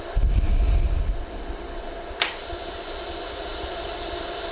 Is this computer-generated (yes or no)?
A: no